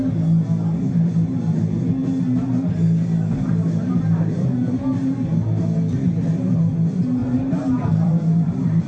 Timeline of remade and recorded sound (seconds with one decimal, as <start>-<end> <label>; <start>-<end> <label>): 0.0-7.2 recorded; 7.2-8.9 remade